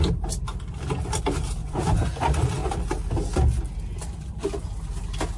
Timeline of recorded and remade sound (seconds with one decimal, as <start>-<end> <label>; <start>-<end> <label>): 0.0-1.6 recorded; 1.6-2.2 remade; 2.2-5.4 recorded